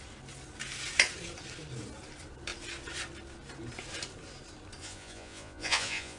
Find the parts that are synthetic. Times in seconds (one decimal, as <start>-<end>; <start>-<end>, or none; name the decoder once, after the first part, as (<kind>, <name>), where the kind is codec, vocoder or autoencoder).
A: 4.8-6.2 (vocoder, Vocos)